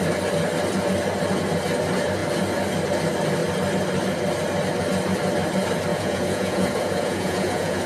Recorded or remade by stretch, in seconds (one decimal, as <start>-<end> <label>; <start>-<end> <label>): 0.0-5.9 recorded; 5.9-7.9 remade